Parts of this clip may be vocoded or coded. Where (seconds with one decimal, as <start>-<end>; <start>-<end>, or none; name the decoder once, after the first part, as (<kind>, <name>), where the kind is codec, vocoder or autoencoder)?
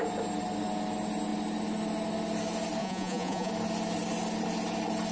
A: 2.8-3.5 (vocoder, Vocos)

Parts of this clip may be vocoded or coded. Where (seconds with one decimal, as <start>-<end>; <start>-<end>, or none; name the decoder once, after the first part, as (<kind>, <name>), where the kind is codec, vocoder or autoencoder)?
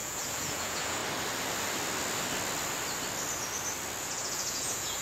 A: 0.0-1.0 (vocoder, Vocos); 4.0-5.0